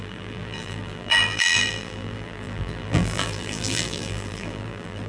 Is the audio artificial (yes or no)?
yes